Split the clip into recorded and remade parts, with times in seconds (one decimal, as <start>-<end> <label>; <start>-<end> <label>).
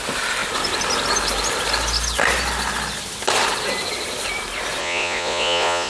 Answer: 0.0-4.8 recorded; 4.8-5.9 remade